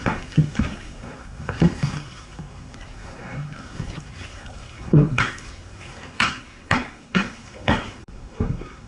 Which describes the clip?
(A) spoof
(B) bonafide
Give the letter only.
A